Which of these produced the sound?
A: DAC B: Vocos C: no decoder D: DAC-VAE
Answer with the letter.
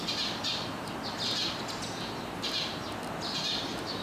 C